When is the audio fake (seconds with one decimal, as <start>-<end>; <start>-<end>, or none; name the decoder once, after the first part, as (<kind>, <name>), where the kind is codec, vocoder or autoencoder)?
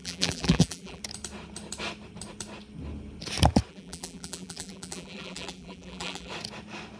0.0-1.0 (vocoder, BigVGAN v2); 3.7-6.3